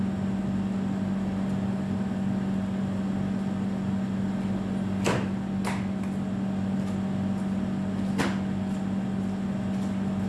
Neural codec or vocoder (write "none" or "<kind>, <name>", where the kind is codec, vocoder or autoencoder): none